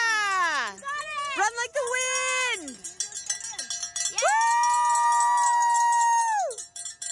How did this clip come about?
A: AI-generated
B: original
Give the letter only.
B